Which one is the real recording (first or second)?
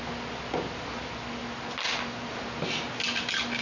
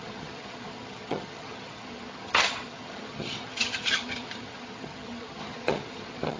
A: first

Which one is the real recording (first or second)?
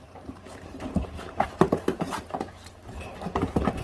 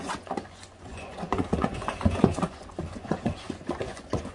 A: first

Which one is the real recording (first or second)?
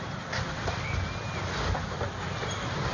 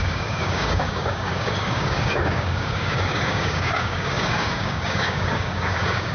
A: first